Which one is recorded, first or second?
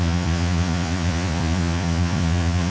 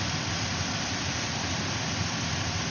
second